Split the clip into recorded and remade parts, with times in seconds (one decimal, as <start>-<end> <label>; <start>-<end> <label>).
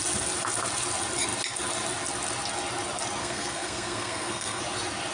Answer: 0.0-3.2 recorded; 3.2-4.6 remade; 4.6-5.1 recorded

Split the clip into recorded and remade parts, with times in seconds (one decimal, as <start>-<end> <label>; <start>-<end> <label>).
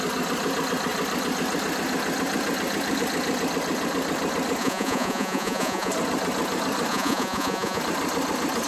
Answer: 0.0-4.6 recorded; 4.6-5.9 remade; 5.9-6.9 recorded; 6.9-7.8 remade; 7.8-8.7 recorded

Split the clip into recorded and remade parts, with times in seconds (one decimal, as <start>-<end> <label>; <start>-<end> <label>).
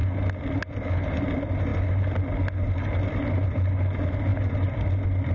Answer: 0.0-5.3 recorded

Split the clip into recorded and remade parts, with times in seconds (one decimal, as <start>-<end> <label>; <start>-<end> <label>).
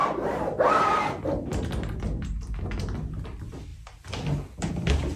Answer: 0.0-5.2 recorded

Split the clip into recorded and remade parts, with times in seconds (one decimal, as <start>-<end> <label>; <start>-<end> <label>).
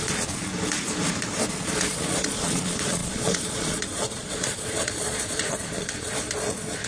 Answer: 0.0-0.5 remade; 0.5-1.5 recorded; 1.5-6.9 remade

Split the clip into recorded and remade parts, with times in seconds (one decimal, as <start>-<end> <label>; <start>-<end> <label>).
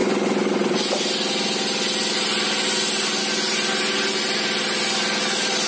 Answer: 0.0-5.7 recorded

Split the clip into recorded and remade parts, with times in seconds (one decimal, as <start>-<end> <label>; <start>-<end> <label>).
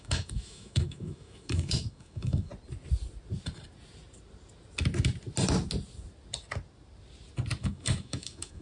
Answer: 0.0-2.5 remade; 2.5-7.6 recorded; 7.6-8.6 remade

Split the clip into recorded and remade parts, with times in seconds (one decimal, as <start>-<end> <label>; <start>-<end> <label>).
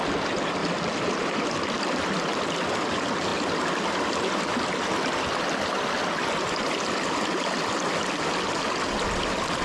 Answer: 0.0-9.6 recorded